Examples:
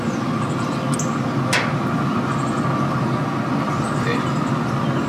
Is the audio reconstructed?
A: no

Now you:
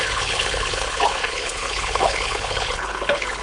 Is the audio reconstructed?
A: yes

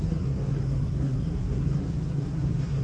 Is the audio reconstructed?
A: yes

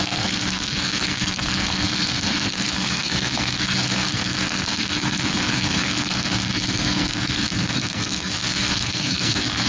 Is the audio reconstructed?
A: yes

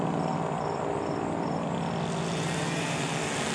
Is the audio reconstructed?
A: no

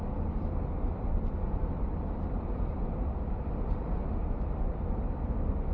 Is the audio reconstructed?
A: no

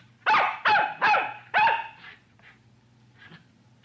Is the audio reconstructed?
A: no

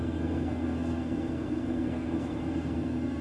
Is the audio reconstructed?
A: yes